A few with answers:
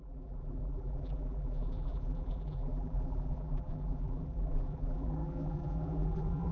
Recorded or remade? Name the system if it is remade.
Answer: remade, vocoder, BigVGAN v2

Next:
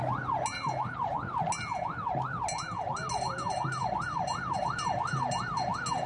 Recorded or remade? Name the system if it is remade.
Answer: recorded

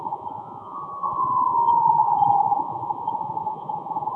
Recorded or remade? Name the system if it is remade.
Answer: remade, vocoder, Vocos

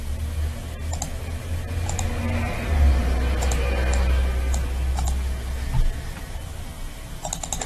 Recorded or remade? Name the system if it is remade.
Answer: recorded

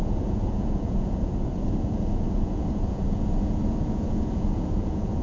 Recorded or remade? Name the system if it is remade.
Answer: remade, vocoder, Vocos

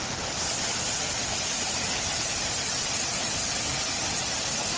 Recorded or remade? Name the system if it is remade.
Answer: recorded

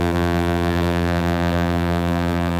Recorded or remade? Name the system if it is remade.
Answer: remade, vocoder, BigVGAN v2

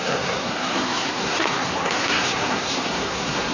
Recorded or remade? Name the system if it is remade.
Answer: remade, codec, SNAC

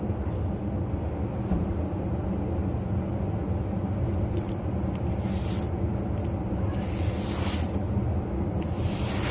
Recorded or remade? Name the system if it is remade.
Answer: recorded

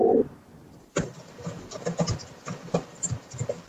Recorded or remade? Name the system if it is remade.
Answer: recorded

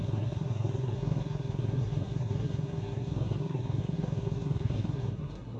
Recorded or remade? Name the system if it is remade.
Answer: remade, codec, SNAC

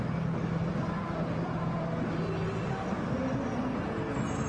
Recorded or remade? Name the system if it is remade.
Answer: recorded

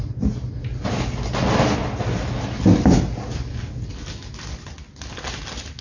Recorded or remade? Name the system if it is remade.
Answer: recorded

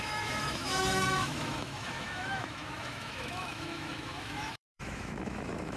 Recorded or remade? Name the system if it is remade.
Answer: remade, autoencoder, DAC-VAE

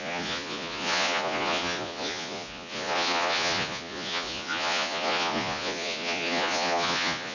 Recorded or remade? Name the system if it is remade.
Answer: remade, vocoder, Vocos